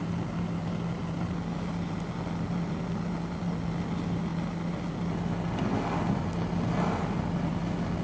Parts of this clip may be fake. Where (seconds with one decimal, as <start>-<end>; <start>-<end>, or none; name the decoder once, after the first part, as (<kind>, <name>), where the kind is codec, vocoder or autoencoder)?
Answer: none